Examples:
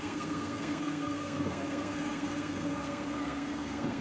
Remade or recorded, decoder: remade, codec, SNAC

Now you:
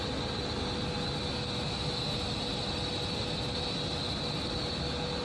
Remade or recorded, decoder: recorded